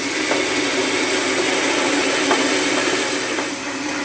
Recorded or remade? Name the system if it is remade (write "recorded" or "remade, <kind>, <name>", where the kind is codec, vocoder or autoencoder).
recorded